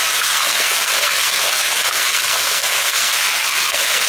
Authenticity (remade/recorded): remade